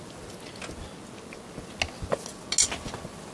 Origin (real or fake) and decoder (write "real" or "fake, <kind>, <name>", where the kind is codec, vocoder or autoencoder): real